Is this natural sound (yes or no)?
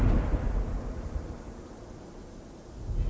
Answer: yes